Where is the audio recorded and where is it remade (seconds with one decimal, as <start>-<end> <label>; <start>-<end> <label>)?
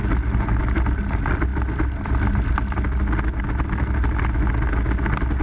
0.0-5.4 recorded